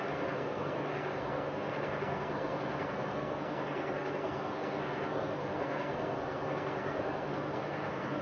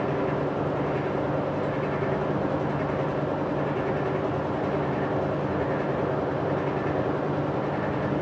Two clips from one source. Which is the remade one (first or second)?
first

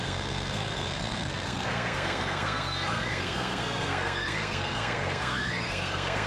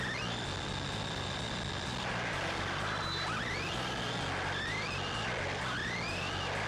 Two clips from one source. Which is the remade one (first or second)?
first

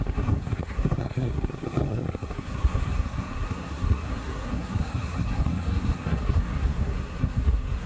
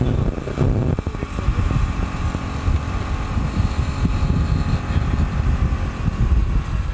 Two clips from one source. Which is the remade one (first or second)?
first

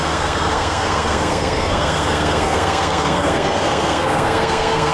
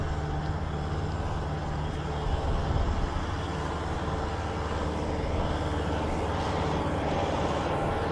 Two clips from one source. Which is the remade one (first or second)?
first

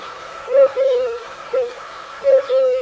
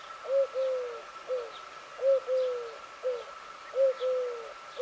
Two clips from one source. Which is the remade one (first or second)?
first